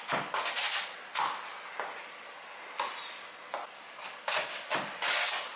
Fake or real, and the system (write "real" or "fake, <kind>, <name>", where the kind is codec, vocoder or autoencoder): real